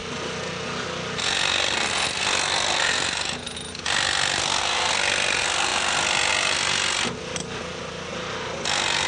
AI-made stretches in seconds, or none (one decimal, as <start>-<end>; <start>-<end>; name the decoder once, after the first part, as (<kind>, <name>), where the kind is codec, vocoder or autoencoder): none

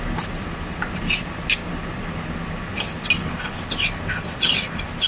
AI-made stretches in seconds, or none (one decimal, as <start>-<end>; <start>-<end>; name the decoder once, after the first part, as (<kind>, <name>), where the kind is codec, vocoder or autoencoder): none